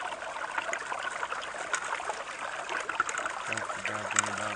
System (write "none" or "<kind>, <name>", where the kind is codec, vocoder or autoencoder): none